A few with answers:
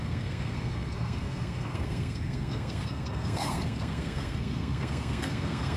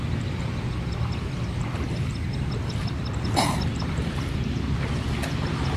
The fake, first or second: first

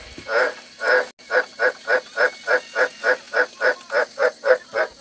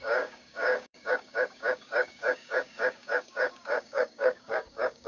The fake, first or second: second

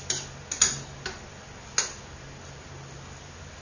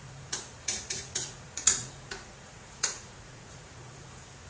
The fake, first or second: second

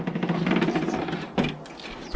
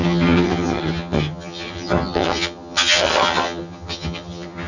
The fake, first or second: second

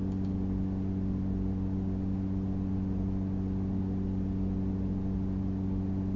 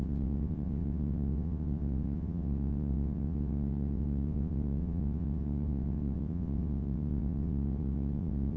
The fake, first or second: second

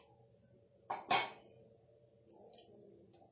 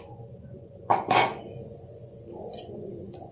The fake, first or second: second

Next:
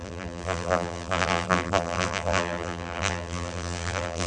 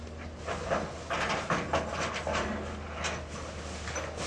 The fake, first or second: first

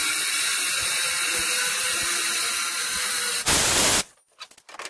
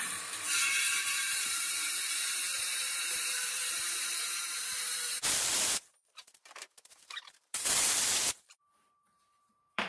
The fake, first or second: second